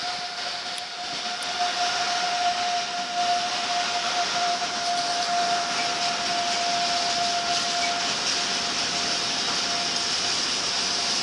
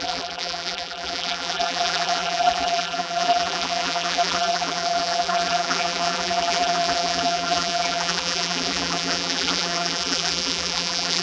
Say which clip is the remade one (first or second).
second